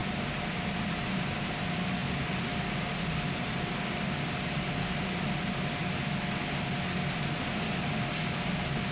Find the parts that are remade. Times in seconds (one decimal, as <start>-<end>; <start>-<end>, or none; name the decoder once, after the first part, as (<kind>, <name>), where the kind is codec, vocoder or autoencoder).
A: none